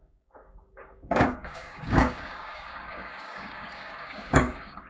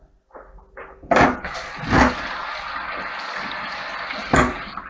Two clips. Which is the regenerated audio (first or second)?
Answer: first